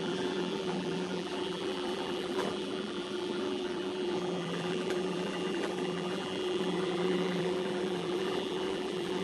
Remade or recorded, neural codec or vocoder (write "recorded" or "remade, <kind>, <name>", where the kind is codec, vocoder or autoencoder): remade, vocoder, BigVGAN v2